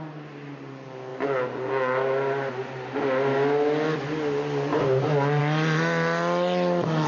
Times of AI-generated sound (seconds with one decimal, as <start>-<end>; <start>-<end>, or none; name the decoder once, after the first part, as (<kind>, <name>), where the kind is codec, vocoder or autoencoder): none